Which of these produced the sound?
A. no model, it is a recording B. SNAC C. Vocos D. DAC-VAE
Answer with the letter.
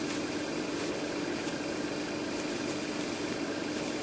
A